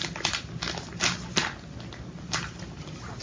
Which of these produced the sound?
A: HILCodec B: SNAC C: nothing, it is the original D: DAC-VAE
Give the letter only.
C